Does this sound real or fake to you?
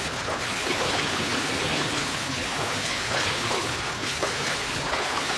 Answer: fake